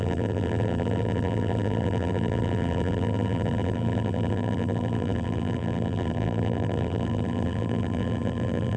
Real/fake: fake